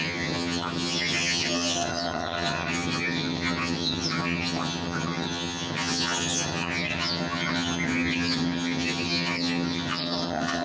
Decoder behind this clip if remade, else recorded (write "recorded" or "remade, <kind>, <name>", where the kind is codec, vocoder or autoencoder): remade, vocoder, HiFi-GAN